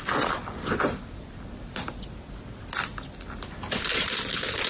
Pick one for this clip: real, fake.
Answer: real